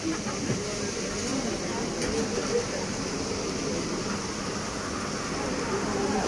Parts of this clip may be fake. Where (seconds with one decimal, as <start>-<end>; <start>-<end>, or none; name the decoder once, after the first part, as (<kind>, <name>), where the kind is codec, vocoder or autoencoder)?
none